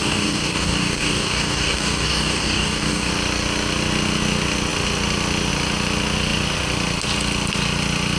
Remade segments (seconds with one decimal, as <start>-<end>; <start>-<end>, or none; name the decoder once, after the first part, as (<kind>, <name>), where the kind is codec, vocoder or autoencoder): 0.0-3.1 (codec, DAC)